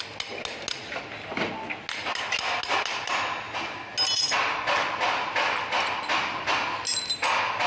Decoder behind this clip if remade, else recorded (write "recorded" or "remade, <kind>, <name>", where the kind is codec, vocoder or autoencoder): recorded